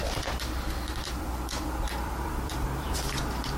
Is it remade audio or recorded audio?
remade